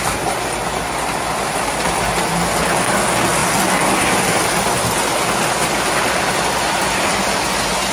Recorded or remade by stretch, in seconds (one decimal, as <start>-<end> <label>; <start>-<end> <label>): 0.0-7.9 recorded